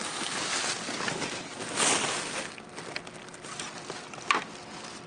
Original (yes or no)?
yes